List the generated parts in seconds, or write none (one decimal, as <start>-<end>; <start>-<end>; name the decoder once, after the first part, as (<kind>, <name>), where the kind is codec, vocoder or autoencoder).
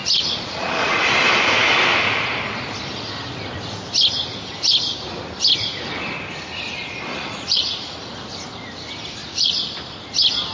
0.0-1.1 (vocoder, Vocos); 7.1-8.1; 9.2-9.9